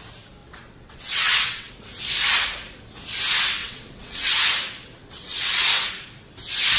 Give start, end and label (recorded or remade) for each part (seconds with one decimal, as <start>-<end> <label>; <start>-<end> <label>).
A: 0.0-0.4 recorded; 0.4-1.7 remade; 1.7-3.6 recorded; 3.6-4.3 remade; 4.3-5.0 recorded; 5.0-5.7 remade; 5.7-6.8 recorded